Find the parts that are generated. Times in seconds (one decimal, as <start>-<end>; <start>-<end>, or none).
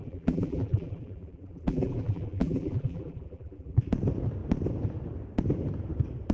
0.0-3.8